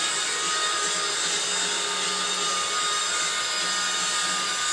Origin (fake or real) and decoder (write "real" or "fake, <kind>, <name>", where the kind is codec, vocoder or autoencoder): real